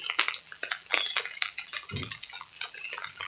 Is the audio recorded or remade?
remade